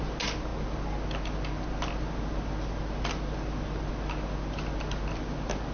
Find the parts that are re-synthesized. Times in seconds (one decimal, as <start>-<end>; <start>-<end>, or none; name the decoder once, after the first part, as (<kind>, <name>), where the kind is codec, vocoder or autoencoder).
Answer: none